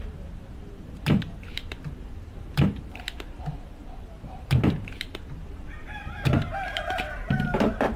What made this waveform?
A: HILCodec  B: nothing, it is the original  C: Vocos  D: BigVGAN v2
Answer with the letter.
D